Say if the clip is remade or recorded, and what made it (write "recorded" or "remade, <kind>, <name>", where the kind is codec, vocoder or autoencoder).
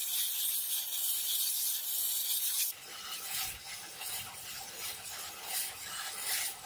remade, vocoder, BigVGAN v2